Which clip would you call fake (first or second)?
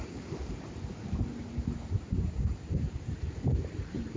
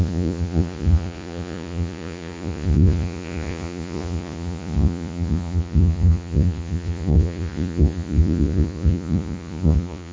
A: second